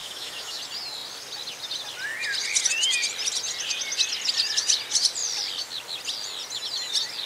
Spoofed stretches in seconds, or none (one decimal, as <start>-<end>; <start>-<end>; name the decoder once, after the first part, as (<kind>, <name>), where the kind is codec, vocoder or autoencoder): 0.0-0.6 (autoencoder, DAC-VAE)